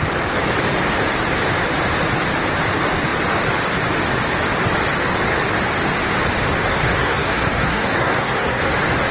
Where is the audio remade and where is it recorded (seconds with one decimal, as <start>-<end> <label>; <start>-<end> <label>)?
0.0-6.7 recorded; 6.7-8.6 remade; 8.6-9.1 recorded